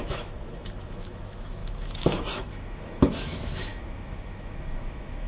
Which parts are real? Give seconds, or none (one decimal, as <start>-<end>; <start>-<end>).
none